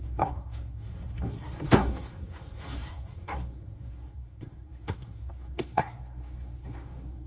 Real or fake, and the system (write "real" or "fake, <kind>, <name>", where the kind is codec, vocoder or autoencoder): fake, codec, SNAC